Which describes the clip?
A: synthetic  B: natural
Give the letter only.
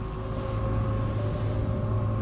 B